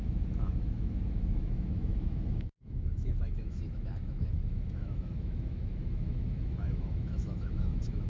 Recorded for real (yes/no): no